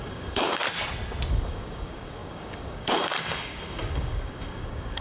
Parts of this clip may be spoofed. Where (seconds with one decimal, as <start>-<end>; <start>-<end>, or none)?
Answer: 0.0-0.6; 1.3-5.0